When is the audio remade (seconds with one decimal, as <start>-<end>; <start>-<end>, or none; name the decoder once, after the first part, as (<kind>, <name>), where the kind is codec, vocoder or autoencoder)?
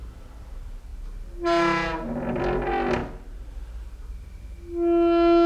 none